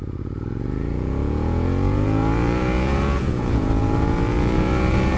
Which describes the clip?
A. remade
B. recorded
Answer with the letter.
A